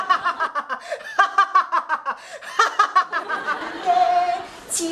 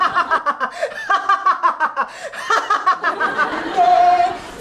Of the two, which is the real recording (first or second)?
first